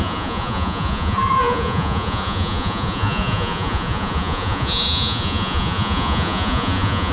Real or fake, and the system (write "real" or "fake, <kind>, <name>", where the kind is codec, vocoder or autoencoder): fake, vocoder, Vocos